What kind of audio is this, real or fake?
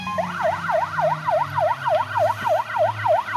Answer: real